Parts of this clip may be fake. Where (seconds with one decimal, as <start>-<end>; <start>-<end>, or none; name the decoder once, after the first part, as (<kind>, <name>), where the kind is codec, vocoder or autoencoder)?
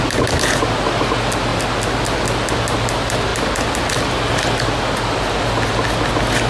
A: none